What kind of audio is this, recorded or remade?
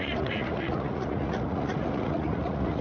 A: remade